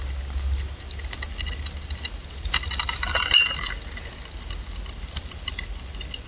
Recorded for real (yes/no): yes